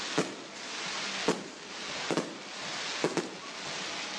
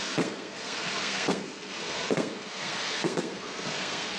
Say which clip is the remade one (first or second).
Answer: second